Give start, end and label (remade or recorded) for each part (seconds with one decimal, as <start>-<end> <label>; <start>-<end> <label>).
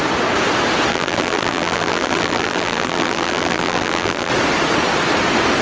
0.0-0.9 recorded; 0.9-4.3 remade; 4.3-5.6 recorded